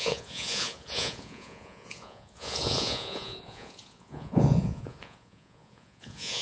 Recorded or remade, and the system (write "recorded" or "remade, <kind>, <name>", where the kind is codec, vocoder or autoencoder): remade, vocoder, Vocos